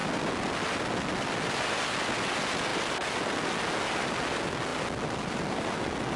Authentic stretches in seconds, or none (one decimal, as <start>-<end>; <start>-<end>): 0.0-6.2